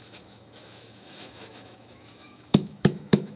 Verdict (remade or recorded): remade